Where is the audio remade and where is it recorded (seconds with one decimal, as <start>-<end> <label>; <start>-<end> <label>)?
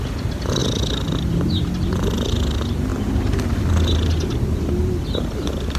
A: 0.0-5.8 recorded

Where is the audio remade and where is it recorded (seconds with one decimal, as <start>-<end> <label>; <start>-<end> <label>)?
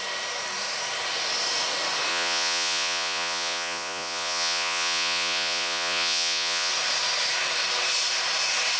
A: 0.0-2.1 recorded; 2.1-6.7 remade; 6.7-8.8 recorded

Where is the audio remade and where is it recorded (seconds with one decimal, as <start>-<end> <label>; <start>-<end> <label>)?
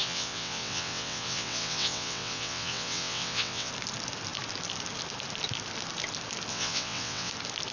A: 0.0-3.7 remade; 3.7-6.5 recorded; 6.5-7.3 remade; 7.3-7.7 recorded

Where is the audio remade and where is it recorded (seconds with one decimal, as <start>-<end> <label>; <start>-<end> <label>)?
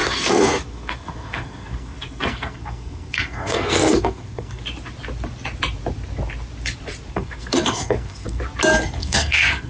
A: 0.0-4.6 remade; 4.6-7.1 recorded; 7.1-8.4 remade; 8.4-9.0 recorded; 9.0-9.7 remade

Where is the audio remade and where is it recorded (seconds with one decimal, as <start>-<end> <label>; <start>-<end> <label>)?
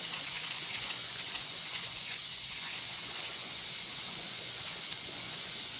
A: 0.0-5.8 remade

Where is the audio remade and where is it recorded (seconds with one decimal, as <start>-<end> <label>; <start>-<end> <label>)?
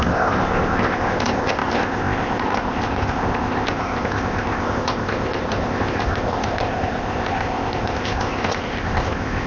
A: 0.0-9.5 remade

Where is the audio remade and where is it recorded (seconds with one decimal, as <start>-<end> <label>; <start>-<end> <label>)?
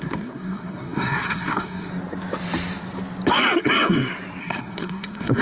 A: 0.0-1.9 remade; 1.9-4.4 recorded; 4.4-5.4 remade